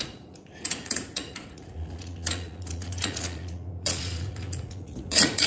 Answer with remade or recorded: remade